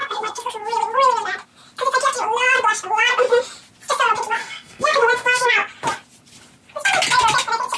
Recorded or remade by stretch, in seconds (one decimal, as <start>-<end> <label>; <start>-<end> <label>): 0.0-0.5 remade; 0.5-4.4 recorded; 4.4-5.5 remade; 5.5-7.8 recorded